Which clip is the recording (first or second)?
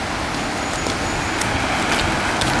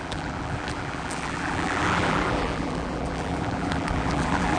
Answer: first